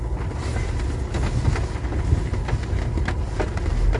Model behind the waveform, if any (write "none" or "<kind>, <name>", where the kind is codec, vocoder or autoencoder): none